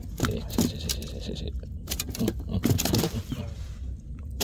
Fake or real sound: fake